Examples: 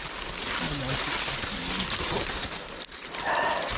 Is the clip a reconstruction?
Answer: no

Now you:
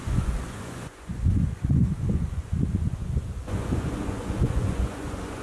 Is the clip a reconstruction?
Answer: yes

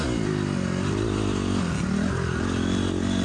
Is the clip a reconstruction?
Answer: no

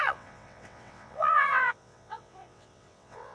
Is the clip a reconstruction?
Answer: yes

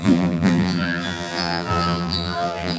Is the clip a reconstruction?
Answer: yes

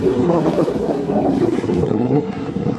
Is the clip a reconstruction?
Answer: yes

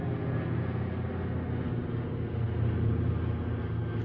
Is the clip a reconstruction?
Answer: no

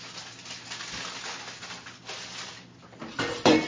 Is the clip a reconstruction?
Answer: no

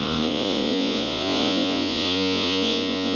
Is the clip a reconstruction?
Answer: yes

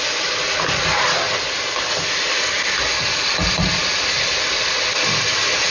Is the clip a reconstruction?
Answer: no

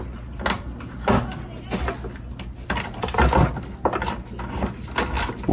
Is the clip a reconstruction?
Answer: no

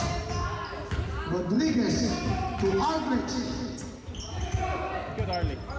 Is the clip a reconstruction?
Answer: no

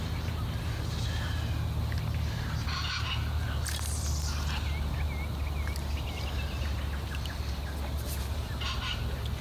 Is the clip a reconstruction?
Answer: no